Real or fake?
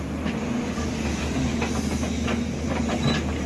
real